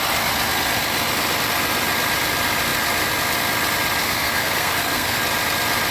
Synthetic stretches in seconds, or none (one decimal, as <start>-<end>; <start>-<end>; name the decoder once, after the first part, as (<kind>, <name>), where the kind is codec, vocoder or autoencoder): 4.0-5.2 (codec, SNAC)